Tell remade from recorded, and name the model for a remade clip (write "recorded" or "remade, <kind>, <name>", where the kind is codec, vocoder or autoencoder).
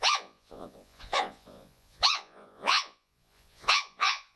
remade, vocoder, Vocos